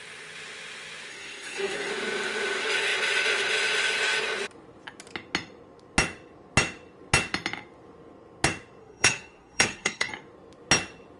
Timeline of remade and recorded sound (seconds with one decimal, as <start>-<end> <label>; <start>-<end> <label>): 0.0-1.1 recorded; 1.1-1.9 remade; 1.9-8.8 recorded; 8.8-10.1 remade; 10.1-11.2 recorded